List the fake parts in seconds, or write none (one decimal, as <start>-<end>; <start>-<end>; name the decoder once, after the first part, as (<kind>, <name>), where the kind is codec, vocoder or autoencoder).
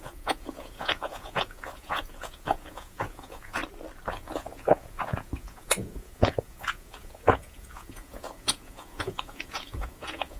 0.0-3.6 (vocoder, Vocos); 4.1-10.4